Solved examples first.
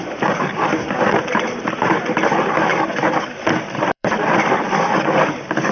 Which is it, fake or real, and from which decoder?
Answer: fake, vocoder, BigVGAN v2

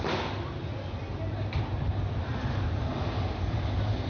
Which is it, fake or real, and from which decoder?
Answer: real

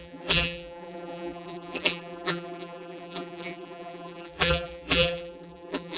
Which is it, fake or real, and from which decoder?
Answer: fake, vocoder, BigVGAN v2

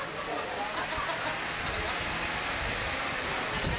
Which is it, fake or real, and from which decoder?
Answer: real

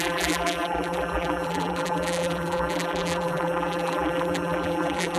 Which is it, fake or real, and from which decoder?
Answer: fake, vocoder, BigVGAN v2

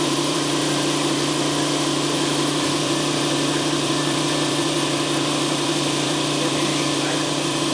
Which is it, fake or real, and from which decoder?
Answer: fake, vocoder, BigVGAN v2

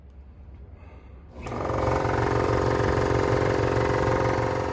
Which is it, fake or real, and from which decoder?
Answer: fake, vocoder, BigVGAN v2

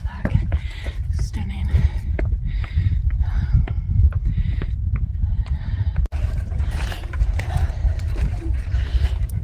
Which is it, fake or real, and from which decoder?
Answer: fake, vocoder, BigVGAN v2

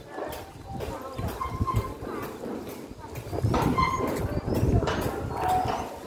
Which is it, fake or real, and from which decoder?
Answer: real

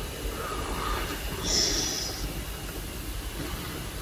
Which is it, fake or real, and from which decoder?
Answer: real